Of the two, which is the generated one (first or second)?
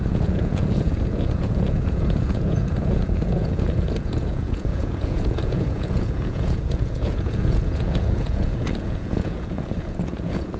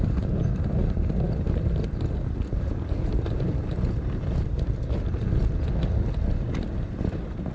first